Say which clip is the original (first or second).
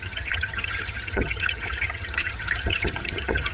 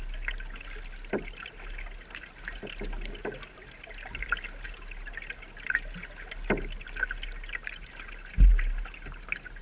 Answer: second